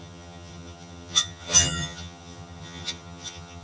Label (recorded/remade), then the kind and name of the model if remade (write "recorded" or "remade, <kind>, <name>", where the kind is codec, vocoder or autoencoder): remade, vocoder, HiFi-GAN